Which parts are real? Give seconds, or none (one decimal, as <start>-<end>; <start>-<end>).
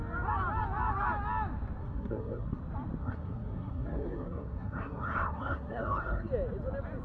0.0-1.8; 2.6-3.0; 6.3-7.0